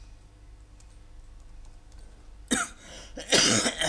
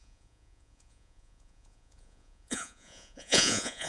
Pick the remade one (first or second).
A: second